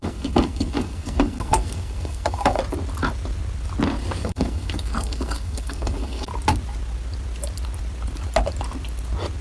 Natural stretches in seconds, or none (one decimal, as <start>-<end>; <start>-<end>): 2.6-4.2; 6.3-9.4